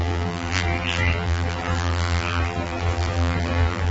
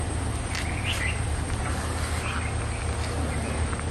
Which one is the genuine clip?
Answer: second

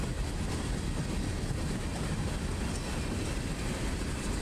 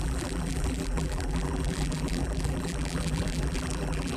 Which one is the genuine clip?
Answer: first